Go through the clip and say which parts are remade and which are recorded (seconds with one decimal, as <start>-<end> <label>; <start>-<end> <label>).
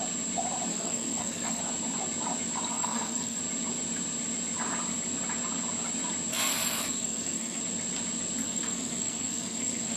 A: 0.0-0.7 recorded; 0.7-1.6 remade; 1.6-2.7 recorded; 2.7-3.4 remade; 3.4-6.3 recorded; 6.3-7.6 remade; 7.6-8.4 recorded; 8.4-10.0 remade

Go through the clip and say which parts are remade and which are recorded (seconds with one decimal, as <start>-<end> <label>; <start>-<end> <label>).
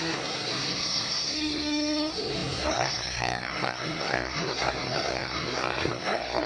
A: 0.0-6.5 remade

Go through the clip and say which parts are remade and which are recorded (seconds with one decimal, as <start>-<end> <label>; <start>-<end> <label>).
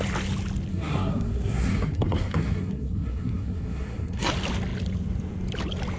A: 0.0-0.7 recorded; 0.7-4.3 remade; 4.3-6.0 recorded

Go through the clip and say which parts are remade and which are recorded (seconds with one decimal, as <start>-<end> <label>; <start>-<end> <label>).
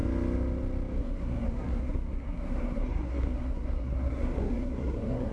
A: 0.0-1.0 recorded; 1.0-5.3 remade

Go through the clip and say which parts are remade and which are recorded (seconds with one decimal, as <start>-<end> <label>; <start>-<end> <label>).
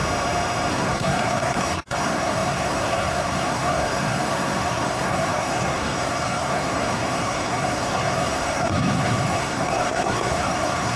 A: 0.0-0.7 recorded; 0.7-11.0 remade